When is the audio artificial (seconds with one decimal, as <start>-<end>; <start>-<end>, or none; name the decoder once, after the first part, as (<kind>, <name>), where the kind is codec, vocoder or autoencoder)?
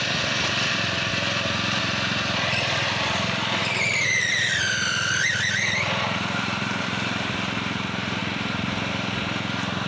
0.0-1.1 (vocoder, BigVGAN v2); 1.8-8.2; 8.9-9.9